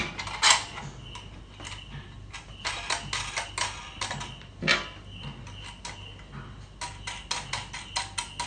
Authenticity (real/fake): real